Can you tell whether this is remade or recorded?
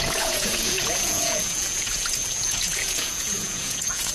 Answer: remade